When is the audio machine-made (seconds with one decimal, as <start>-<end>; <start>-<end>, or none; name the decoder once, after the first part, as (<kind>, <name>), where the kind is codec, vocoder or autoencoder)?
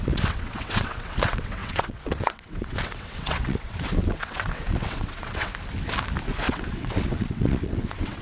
0.0-5.5 (vocoder, WaveNeXt); 6.2-8.2